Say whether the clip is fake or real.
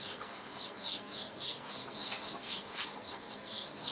fake